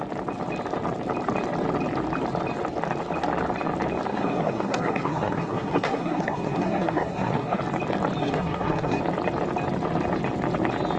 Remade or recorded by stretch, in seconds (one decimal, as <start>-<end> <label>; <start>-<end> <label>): 0.0-4.1 recorded; 4.1-7.6 remade; 7.6-8.2 recorded; 8.2-9.0 remade; 9.0-11.0 recorded